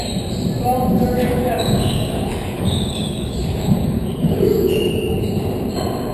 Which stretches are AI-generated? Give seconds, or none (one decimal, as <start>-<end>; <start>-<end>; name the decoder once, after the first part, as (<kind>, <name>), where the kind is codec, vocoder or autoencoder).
1.2-4.9 (codec, DAC)